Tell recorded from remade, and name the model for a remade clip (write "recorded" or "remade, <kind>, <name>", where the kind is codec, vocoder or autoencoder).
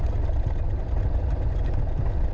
recorded